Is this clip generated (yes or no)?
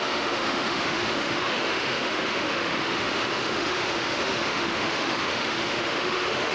yes